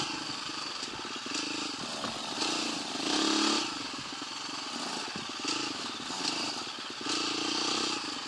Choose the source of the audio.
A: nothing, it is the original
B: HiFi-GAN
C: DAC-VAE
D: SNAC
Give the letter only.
A